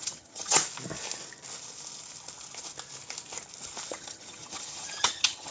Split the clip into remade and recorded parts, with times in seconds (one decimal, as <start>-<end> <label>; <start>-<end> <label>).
0.0-0.6 remade; 0.6-3.9 recorded; 3.9-5.5 remade